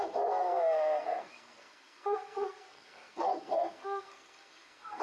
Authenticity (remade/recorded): remade